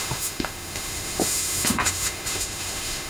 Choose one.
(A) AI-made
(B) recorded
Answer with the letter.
A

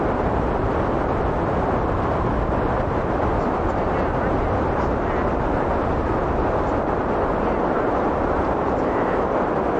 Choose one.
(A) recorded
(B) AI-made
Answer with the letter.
A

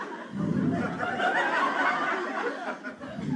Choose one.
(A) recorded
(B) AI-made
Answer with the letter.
A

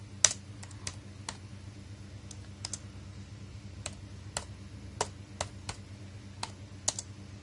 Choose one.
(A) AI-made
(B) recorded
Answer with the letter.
B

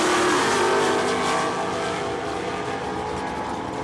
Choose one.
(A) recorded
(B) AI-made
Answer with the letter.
A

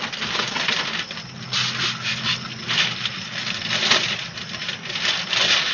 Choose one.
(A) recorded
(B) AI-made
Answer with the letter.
A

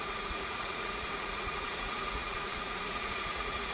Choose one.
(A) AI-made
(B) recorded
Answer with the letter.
A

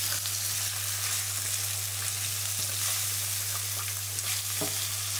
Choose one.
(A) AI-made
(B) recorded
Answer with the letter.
B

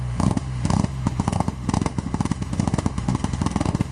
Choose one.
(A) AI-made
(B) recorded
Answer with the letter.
A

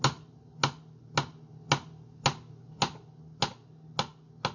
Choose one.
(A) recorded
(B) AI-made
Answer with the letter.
A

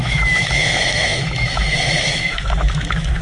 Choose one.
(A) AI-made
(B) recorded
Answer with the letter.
A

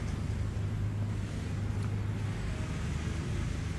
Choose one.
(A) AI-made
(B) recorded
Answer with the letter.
B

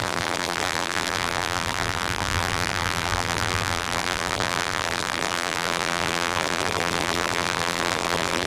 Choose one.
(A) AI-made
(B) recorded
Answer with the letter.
A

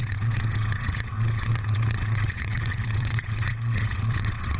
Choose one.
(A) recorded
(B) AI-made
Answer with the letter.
B